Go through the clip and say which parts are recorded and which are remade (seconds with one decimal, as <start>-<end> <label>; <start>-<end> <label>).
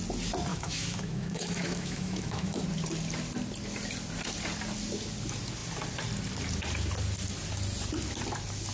0.0-0.5 recorded; 0.5-2.6 remade; 2.6-8.7 recorded